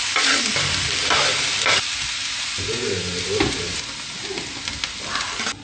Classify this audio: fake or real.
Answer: real